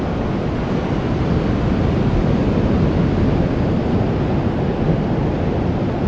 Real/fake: real